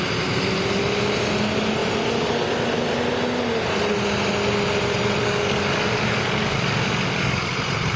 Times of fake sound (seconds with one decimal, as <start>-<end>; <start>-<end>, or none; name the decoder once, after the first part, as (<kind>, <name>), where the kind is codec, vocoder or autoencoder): 5.2-7.5 (codec, DAC)